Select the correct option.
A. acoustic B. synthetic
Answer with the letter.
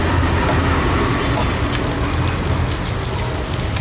A